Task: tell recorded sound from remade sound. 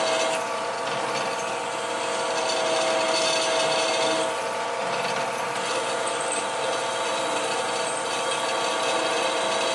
recorded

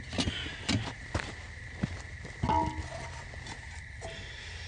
recorded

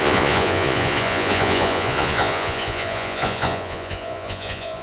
remade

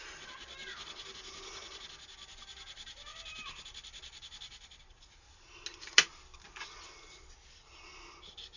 recorded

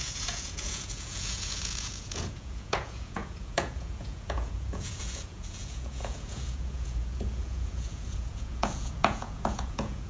remade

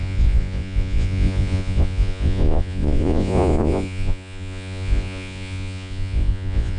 remade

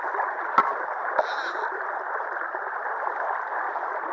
recorded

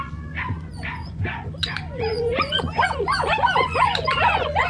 remade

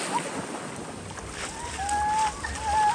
recorded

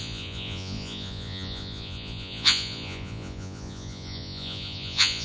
remade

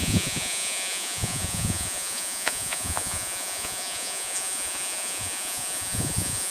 remade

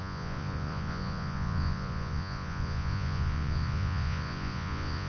remade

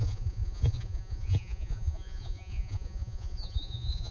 remade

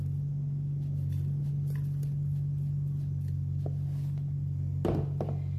recorded